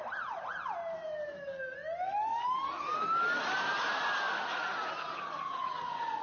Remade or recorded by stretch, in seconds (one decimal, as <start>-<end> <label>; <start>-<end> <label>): 0.0-6.2 recorded